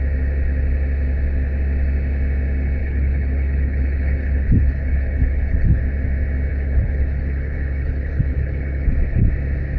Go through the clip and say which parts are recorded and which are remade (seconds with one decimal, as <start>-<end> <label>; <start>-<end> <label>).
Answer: 0.0-2.8 recorded; 2.8-5.8 remade; 5.8-6.5 recorded; 6.5-9.3 remade; 9.3-9.8 recorded